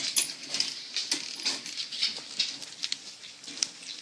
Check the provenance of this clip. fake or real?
real